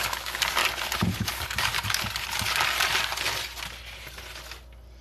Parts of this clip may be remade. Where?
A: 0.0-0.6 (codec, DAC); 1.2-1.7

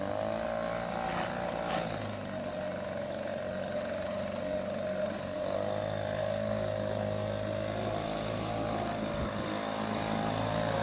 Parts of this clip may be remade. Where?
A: none

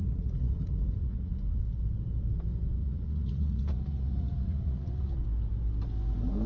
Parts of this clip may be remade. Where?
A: 0.0-1.6 (vocoder, Vocos); 2.8-5.1

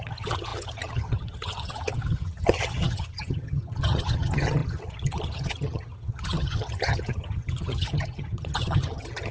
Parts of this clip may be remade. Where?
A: 0.0-9.3 (vocoder, HiFi-GAN)